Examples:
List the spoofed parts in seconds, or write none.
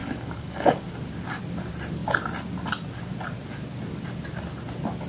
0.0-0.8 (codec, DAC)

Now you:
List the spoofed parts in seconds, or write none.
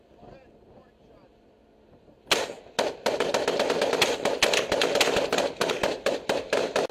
none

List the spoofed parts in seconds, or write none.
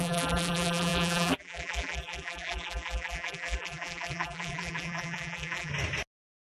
0.0-5.7 (vocoder, BigVGAN v2)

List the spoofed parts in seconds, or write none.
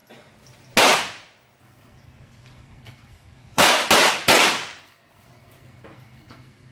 1.6-3.8 (codec, SNAC); 4.8-6.7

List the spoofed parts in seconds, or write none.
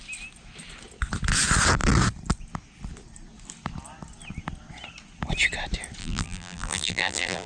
6.0-7.5 (vocoder, BigVGAN v2)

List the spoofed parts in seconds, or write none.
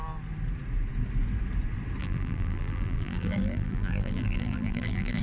2.0-5.2 (vocoder, BigVGAN v2)